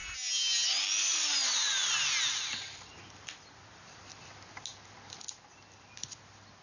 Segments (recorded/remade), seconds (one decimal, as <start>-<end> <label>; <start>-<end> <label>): 0.0-6.6 recorded